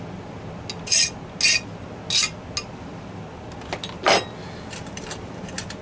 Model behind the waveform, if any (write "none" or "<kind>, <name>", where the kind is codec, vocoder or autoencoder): none